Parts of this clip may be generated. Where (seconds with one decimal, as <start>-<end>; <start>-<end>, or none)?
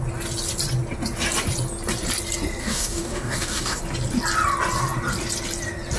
2.6-3.8